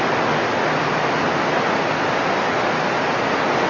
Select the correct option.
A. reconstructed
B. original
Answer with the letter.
B